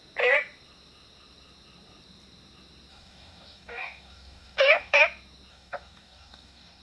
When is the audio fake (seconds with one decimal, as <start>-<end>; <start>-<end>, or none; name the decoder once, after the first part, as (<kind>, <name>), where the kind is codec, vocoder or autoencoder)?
2.9-5.0 (codec, DAC); 5.5-6.8